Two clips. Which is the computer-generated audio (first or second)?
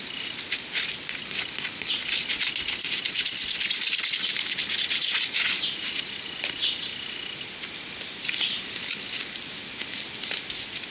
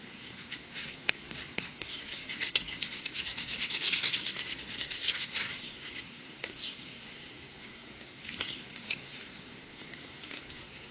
second